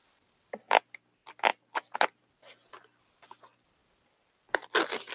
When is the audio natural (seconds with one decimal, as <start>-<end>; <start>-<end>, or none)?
0.6-5.1